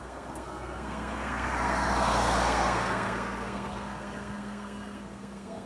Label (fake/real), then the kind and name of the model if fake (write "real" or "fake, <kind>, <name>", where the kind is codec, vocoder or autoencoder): fake, codec, SNAC